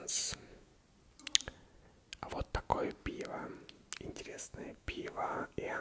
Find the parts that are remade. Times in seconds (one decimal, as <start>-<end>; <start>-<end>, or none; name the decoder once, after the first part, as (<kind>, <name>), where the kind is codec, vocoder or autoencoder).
0.0-0.7 (autoencoder, DAC-VAE); 4.2-5.8